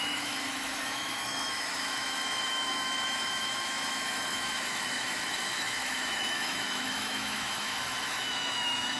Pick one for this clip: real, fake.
fake